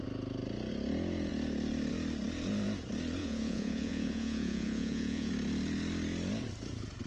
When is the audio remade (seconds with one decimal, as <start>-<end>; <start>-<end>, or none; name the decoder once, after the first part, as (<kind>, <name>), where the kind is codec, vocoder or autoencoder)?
3.2-5.3 (vocoder, Vocos)